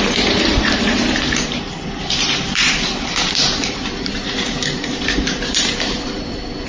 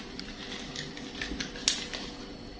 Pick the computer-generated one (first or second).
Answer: first